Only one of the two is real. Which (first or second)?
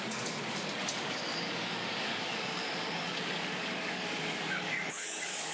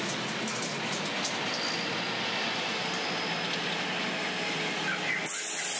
second